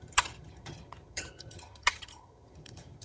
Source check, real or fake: fake